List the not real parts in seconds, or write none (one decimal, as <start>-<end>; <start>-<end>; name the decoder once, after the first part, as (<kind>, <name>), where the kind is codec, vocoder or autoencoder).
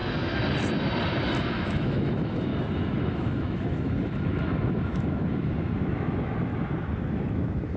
1.4-2.5 (autoencoder, DAC-VAE); 3.1-6.5; 7.1-7.8